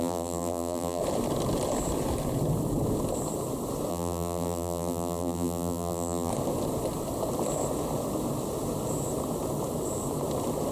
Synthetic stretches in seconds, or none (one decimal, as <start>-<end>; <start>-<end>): 0.0-1.0; 3.9-6.3